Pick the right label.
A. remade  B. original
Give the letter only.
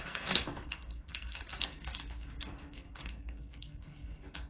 A